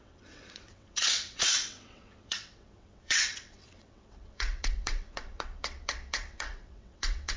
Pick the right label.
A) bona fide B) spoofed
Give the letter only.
B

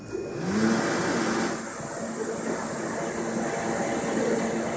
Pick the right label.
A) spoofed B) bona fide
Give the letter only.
B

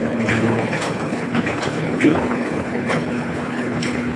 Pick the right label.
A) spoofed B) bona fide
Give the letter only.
A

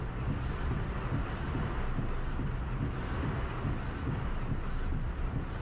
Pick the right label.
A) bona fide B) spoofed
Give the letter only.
A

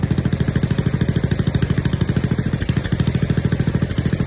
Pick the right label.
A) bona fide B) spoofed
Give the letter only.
A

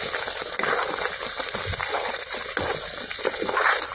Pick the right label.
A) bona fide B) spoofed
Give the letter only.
A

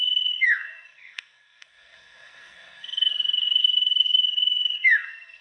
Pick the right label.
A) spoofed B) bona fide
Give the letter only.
A